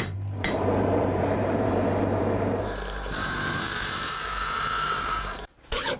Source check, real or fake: fake